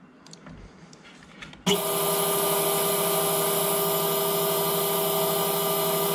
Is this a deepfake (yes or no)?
no